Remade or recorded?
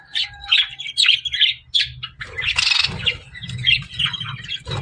recorded